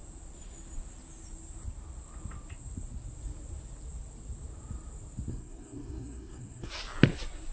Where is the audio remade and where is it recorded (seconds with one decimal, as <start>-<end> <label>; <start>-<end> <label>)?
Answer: 0.0-5.3 recorded; 5.3-6.7 remade; 6.7-7.5 recorded